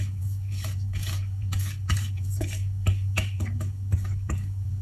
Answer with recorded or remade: remade